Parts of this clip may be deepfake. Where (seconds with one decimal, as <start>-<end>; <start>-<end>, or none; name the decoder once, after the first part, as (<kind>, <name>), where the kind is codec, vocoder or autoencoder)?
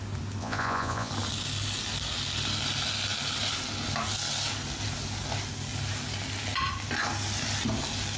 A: 0.4-1.1 (vocoder, Vocos)